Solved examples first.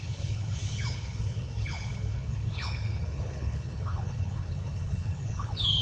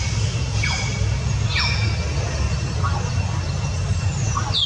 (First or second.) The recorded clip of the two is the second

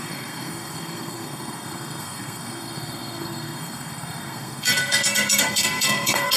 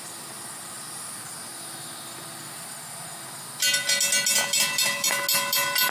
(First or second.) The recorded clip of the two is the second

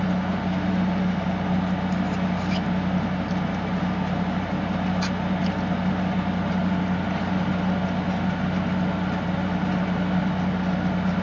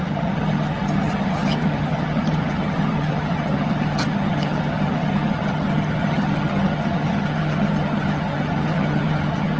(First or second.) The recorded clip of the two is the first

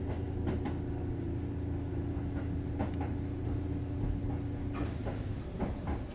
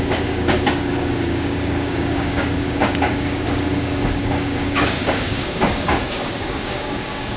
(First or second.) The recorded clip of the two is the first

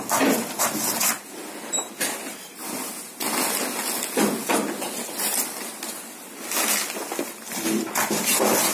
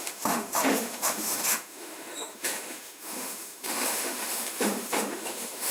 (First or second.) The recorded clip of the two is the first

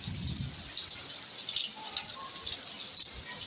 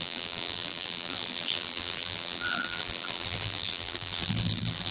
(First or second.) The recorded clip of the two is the first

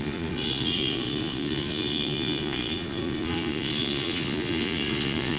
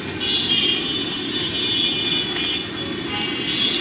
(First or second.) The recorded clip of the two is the second